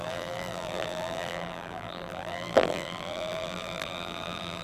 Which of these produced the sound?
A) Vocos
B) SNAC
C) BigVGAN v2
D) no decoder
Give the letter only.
C